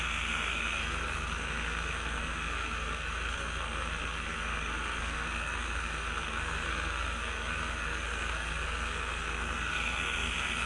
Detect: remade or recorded remade